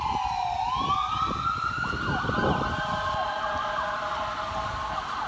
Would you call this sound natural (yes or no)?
yes